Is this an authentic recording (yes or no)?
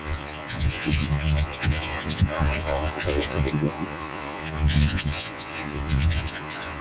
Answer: no